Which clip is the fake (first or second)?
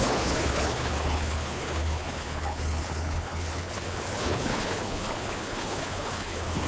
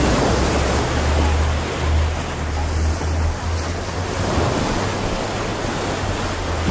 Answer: first